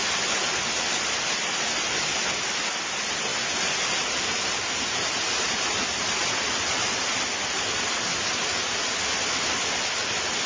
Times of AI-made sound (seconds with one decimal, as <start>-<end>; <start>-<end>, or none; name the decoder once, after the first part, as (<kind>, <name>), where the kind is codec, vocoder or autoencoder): 3.3-6.4 (vocoder, BigVGAN v2)